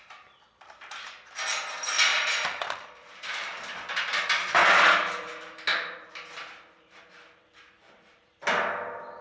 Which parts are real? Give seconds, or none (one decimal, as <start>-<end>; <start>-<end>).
0.0-2.1; 3.6-4.6; 5.3-5.7; 8.4-9.2

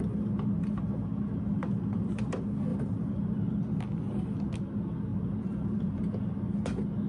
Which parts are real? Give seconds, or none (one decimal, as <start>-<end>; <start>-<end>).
0.0-1.6; 2.3-2.7; 3.8-5.1; 6.4-7.1

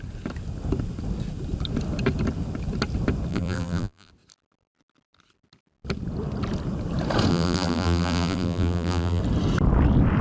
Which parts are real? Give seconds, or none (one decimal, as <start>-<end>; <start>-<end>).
0.0-3.3; 4.1-7.3; 9.2-10.2

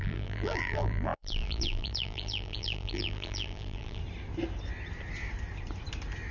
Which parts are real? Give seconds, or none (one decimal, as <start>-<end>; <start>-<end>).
4.0-6.3

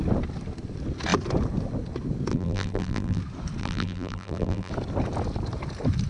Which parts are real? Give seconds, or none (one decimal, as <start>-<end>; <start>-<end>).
0.0-2.3; 3.2-3.6; 4.7-6.1

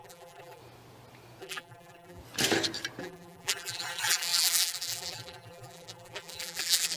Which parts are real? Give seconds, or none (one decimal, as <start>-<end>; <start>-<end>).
0.6-1.4; 2.2-3.0

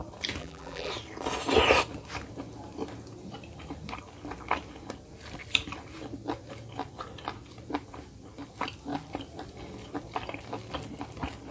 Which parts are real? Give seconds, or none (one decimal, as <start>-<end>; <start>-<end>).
0.0-0.4; 0.9-11.5